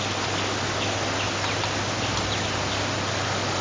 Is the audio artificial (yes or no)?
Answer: no